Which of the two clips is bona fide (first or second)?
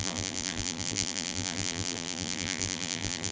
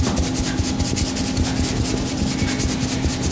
second